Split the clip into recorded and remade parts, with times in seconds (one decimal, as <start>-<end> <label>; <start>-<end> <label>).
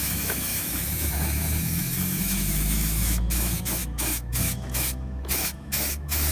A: 0.0-6.3 remade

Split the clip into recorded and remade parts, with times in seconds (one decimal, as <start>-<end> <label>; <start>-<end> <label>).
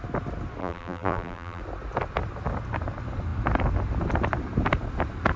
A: 0.0-0.6 recorded; 0.6-1.6 remade; 1.6-5.4 recorded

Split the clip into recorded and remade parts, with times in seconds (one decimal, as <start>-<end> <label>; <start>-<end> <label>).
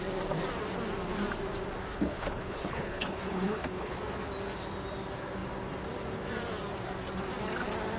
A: 0.0-1.9 recorded; 1.9-4.0 remade; 4.0-8.0 recorded